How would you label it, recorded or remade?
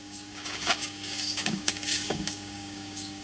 remade